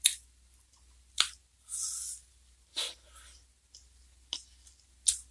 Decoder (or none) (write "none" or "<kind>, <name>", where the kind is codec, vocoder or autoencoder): none